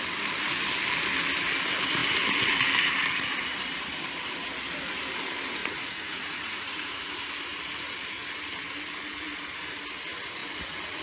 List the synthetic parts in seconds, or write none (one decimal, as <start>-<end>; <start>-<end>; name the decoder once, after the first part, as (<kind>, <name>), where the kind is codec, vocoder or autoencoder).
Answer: 5.6-7.1 (vocoder, Vocos); 10.4-11.0

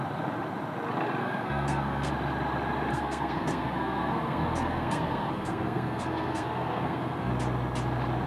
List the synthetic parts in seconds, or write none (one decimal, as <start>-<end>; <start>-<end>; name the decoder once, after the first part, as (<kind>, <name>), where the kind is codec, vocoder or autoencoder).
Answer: 1.2-2.1 (codec, SNAC); 2.9-7.3

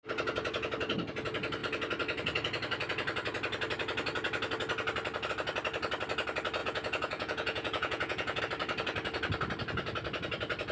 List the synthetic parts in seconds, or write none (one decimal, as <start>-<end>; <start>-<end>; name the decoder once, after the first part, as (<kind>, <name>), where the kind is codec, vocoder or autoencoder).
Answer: 6.6-8.4 (vocoder, Vocos)

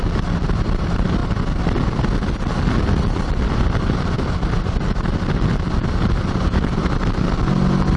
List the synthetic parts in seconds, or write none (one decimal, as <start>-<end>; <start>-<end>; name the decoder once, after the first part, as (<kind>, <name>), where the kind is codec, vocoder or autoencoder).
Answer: none

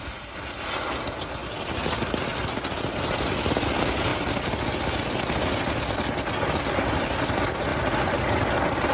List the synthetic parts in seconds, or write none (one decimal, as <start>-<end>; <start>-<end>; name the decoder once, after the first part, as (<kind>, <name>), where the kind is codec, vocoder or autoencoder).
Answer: none

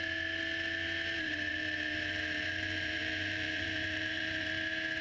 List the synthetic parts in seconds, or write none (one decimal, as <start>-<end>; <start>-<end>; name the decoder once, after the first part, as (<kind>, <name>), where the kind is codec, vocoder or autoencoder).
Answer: 1.5-4.5 (vocoder, BigVGAN v2)

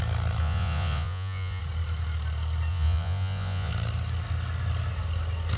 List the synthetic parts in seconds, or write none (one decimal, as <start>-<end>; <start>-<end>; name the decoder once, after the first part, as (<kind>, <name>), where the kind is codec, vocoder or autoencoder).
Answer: 0.4-1.6 (vocoder, Vocos); 2.7-3.7

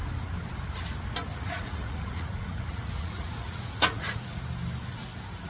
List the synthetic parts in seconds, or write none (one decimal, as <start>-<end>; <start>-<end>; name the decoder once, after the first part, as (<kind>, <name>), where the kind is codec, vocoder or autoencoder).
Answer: 1.3-4.4 (vocoder, Vocos)